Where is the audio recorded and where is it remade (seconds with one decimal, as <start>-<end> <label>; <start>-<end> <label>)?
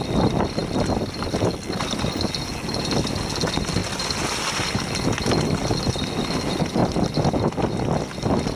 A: 0.0-8.6 recorded